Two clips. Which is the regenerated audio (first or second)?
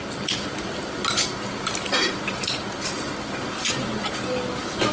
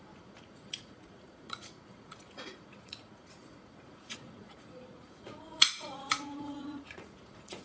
second